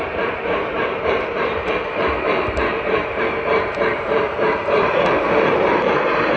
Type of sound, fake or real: fake